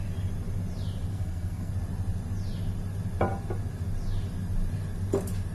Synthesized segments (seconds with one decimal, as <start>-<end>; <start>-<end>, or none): 1.1-1.7